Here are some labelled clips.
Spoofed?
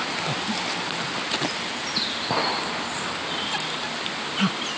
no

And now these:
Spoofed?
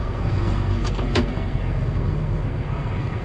yes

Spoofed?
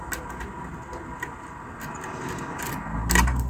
no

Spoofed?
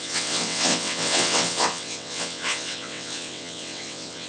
yes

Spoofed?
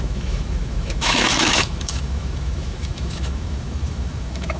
yes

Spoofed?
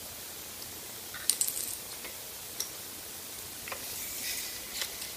no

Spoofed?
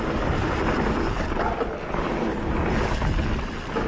no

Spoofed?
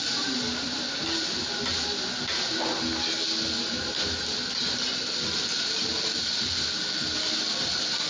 no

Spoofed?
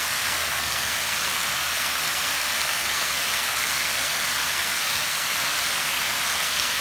yes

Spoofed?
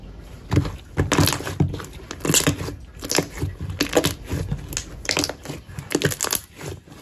no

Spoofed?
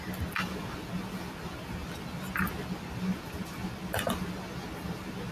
no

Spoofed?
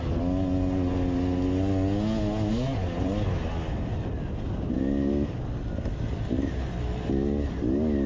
no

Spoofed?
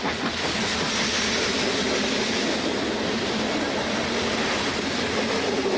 no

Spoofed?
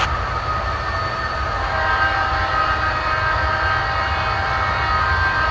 no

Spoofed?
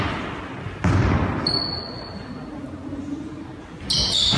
no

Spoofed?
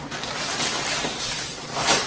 no